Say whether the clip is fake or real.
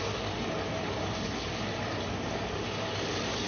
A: real